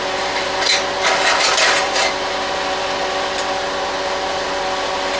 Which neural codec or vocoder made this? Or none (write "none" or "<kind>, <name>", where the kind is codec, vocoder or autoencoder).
none